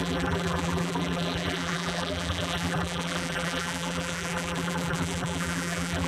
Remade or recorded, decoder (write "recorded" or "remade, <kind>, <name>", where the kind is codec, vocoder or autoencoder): remade, vocoder, BigVGAN v2